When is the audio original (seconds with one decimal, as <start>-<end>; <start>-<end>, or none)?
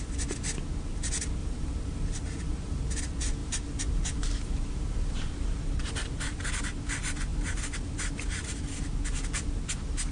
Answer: 0.0-1.4; 3.0-3.4; 6.5-7.3; 8.8-10.1